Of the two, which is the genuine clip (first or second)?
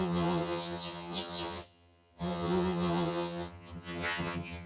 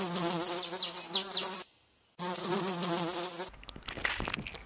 second